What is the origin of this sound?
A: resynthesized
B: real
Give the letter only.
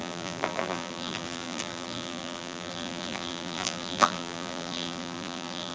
A